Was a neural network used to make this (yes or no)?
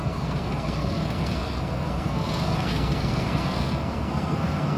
yes